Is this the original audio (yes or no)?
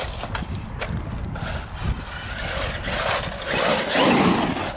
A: yes